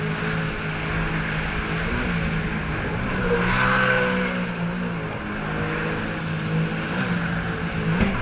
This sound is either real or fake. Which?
real